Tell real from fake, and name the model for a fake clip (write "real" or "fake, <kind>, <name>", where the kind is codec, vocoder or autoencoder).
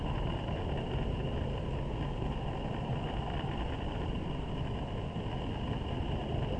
real